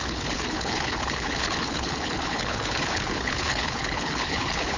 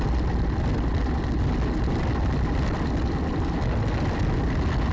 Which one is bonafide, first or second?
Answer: second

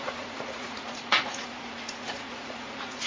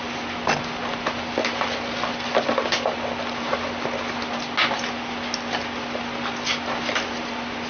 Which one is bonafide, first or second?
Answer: second